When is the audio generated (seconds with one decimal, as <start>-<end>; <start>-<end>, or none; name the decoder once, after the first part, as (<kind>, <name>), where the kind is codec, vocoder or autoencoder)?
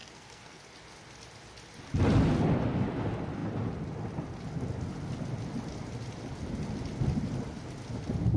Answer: 0.0-0.6 (codec, SNAC)